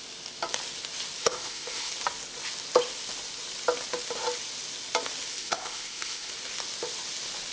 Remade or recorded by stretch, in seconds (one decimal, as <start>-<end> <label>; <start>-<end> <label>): 0.0-1.2 recorded; 1.2-1.9 remade; 1.9-5.3 recorded; 5.3-6.3 remade; 6.3-7.5 recorded